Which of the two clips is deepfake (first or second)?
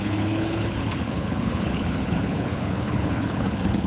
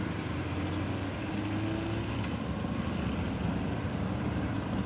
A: first